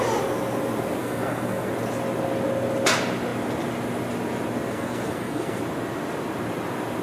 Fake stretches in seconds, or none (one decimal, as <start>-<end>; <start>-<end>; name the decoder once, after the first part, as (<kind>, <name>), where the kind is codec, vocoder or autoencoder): 1.0-1.7 (codec, SNAC); 4.7-5.6